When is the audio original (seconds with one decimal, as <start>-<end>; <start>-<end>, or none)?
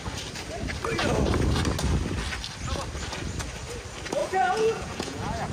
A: 0.0-4.2